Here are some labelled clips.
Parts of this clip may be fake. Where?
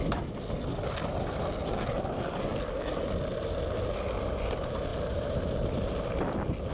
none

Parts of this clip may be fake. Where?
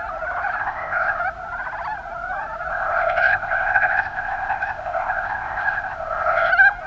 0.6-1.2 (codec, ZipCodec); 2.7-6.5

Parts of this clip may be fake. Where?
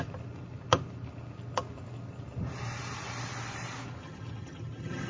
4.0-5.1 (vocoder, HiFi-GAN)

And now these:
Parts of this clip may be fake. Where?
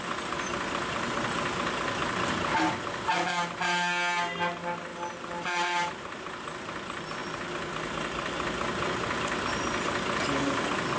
none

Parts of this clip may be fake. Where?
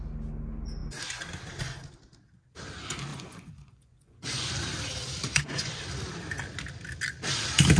3.1-4.6 (vocoder, Vocos); 5.3-5.8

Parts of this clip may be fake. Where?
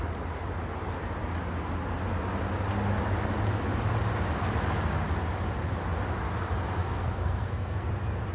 6.8-7.9 (codec, SNAC)